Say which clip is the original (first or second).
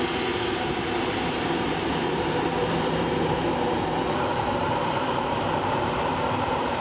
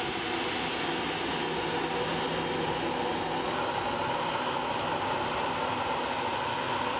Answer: second